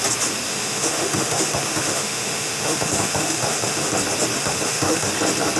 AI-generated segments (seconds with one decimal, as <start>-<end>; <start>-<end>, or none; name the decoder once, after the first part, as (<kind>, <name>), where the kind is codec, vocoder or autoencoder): 0.5-3.9 (autoencoder, DAC-VAE); 4.4-5.1